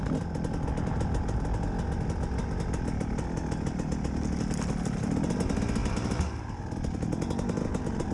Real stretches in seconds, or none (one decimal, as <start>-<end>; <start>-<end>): 0.0-5.8; 6.6-8.1